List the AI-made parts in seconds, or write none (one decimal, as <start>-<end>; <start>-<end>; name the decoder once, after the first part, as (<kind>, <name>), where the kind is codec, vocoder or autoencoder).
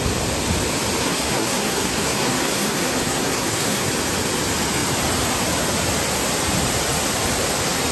1.0-3.9 (codec, SNAC)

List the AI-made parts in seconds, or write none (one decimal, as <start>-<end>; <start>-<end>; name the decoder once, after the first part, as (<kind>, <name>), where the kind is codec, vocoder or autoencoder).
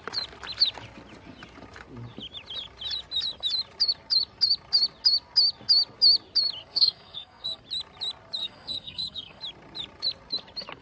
6.6-7.6 (codec, SNAC); 8.4-9.4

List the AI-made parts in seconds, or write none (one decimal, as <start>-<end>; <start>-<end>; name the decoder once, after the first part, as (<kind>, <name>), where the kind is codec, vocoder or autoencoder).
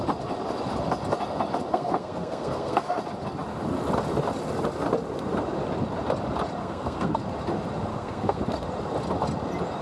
1.7-3.0 (codec, SNAC); 6.6-7.2; 7.9-8.4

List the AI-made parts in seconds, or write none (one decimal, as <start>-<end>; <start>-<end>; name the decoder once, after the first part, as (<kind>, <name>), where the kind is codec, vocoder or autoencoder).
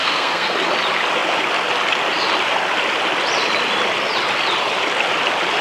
0.0-0.5 (codec, SNAC)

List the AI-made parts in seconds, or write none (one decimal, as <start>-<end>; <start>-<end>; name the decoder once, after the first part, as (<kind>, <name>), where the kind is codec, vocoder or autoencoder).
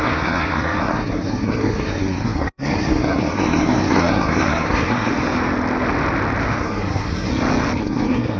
0.0-5.1 (codec, SNAC); 6.6-7.3; 7.8-8.4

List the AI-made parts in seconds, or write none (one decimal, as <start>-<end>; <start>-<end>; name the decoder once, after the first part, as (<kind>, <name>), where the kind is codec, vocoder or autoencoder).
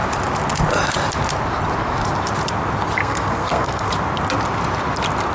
3.0-3.9 (codec, SNAC)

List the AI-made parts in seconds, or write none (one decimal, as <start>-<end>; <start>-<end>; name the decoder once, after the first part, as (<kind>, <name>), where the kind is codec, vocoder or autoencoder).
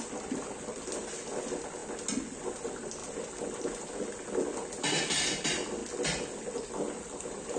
none